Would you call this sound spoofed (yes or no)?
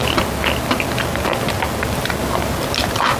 no